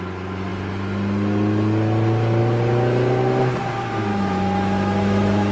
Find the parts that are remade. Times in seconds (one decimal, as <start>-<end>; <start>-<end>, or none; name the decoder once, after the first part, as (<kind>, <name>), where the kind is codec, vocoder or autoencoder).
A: 4.1-5.5 (autoencoder, DAC-VAE)